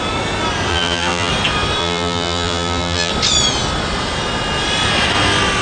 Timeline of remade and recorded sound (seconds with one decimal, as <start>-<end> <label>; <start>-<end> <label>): 0.0-0.7 recorded; 0.7-1.3 remade; 1.3-1.8 recorded; 1.8-3.1 remade; 3.1-5.6 recorded